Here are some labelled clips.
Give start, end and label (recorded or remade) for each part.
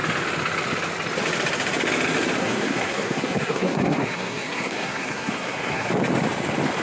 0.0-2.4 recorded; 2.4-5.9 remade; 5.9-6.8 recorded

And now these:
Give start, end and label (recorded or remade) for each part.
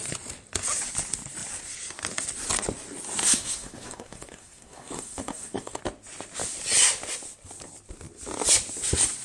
0.0-3.2 recorded; 3.2-5.8 remade; 5.8-9.2 recorded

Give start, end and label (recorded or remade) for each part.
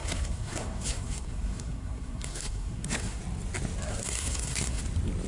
0.0-3.2 remade; 3.2-3.9 recorded; 3.9-4.8 remade; 4.8-5.3 recorded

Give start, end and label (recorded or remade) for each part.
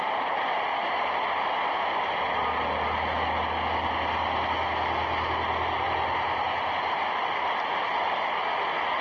0.0-9.0 recorded